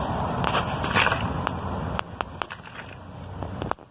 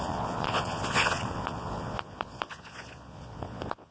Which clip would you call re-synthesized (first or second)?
second